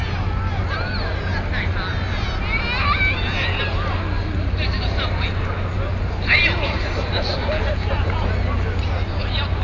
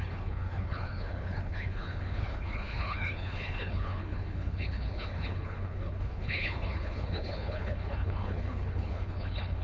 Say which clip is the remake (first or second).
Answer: second